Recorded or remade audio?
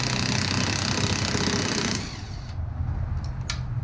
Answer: recorded